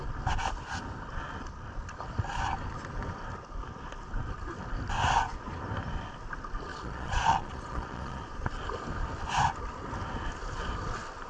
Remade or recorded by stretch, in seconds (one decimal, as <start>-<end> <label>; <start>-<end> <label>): 0.0-6.7 recorded; 6.7-8.5 remade; 8.5-11.3 recorded